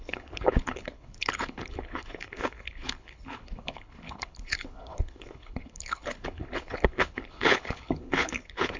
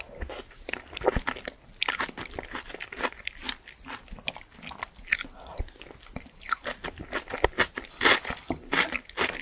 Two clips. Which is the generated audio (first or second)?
first